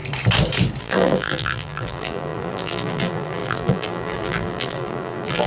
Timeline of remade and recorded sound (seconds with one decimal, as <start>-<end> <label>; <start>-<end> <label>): 0.0-0.8 recorded; 0.8-5.5 remade